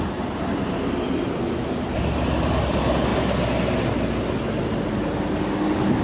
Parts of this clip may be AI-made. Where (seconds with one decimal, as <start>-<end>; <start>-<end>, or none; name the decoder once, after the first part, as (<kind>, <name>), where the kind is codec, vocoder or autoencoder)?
none